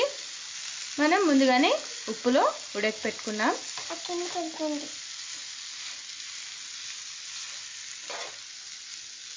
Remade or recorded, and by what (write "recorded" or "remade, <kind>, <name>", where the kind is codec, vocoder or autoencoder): recorded